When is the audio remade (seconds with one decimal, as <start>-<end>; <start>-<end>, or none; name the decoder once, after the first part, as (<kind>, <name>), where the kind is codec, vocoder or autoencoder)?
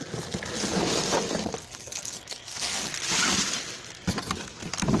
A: 1.6-2.8 (codec, SNAC)